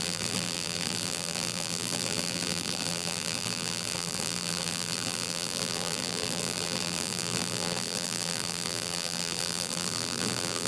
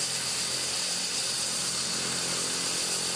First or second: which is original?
second